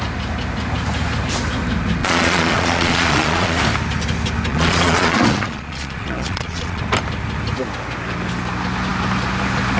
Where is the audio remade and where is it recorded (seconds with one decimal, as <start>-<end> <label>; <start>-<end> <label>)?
0.0-2.0 recorded; 2.0-3.6 remade; 3.6-4.5 recorded; 4.5-6.8 remade; 6.8-9.8 recorded